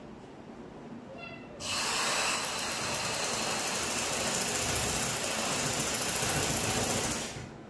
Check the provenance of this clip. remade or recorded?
recorded